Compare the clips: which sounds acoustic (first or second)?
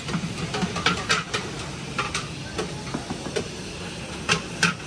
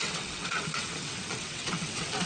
first